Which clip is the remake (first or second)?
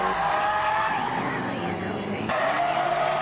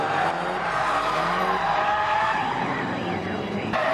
second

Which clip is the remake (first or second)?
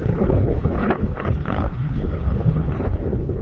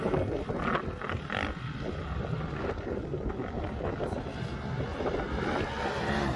first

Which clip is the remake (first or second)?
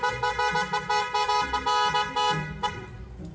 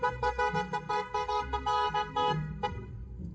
second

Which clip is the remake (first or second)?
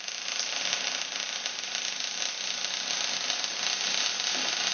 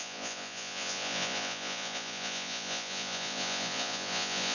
second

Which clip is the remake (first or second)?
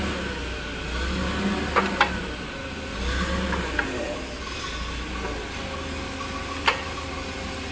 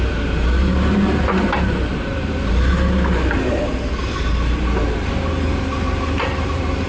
second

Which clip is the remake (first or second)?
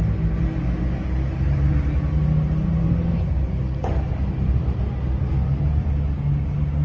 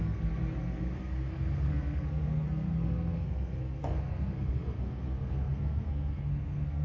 second